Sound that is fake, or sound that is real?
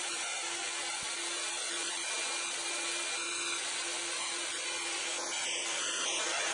real